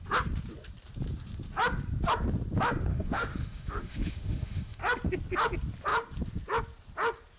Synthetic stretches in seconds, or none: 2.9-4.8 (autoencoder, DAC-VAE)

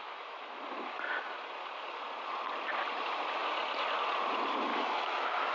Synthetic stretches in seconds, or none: 0.0-0.6 (autoencoder, DAC-VAE); 4.7-5.5

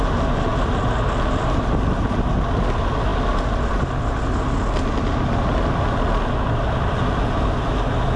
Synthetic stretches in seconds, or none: none